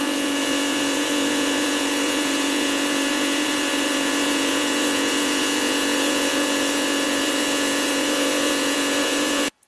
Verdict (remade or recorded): remade